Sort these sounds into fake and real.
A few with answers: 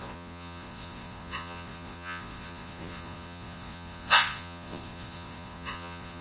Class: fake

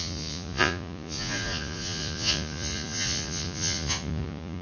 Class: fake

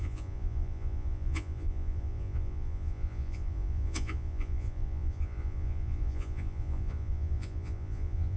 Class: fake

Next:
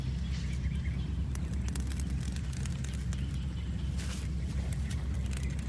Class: real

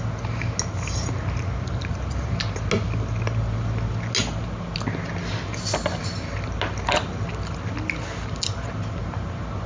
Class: real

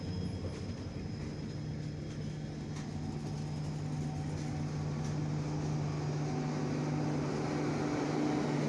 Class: real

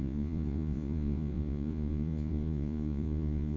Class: fake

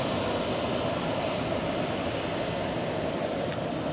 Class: real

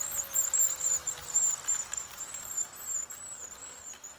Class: real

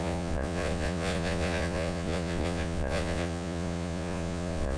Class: fake